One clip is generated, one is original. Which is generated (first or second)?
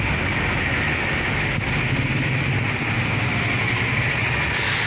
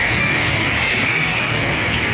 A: second